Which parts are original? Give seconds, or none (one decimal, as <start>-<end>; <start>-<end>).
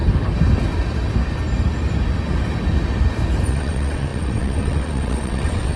0.0-3.5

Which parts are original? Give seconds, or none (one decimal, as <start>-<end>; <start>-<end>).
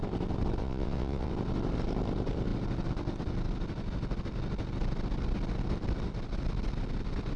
0.0-0.6; 1.3-7.4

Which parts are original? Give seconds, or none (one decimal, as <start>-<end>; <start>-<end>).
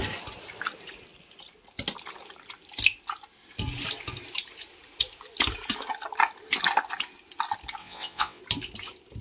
0.0-7.8; 8.4-9.2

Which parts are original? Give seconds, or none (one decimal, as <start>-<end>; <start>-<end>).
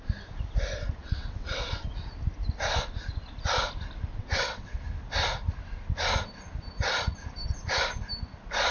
0.0-1.0; 1.7-4.1; 4.8-8.7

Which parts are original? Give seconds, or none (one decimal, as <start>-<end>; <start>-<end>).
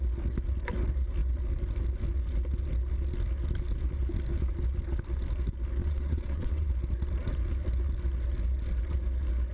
0.0-5.8; 6.7-9.5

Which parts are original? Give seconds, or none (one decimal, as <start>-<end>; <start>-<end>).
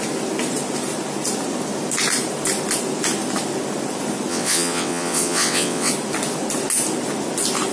0.0-4.3; 5.9-7.7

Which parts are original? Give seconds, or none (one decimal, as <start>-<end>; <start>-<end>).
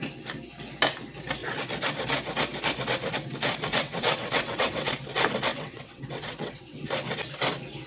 0.0-3.7; 4.9-5.5; 6.8-7.9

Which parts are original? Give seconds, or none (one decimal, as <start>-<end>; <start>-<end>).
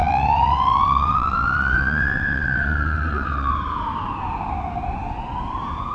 3.5-5.9